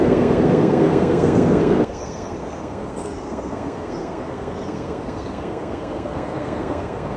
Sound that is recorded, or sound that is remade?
remade